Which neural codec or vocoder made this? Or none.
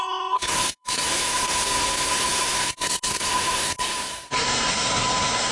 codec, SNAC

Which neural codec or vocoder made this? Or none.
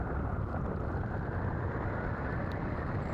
none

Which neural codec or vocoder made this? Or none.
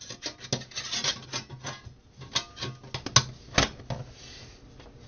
none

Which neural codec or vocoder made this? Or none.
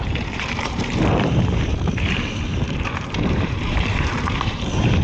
vocoder, BigVGAN v2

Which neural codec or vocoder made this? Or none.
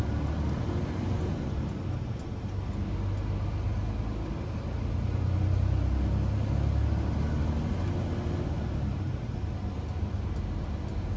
none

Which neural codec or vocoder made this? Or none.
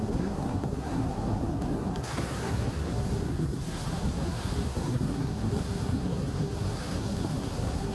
codec, SNAC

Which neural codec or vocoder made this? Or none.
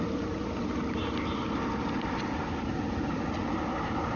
none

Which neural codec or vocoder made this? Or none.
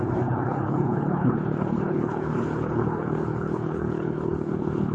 codec, HILCodec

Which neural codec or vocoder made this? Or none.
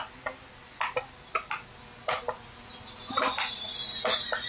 none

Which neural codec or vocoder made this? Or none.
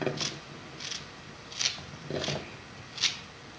none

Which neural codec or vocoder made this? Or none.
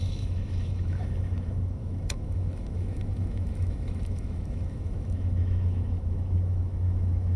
autoencoder, DAC-VAE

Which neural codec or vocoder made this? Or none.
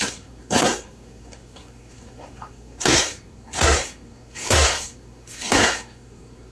codec, SNAC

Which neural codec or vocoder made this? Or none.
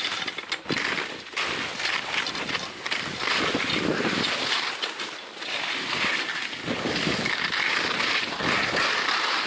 none